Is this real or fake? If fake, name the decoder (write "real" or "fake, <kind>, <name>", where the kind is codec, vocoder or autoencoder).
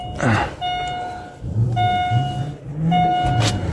real